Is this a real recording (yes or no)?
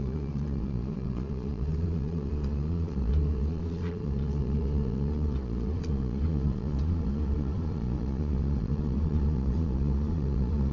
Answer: no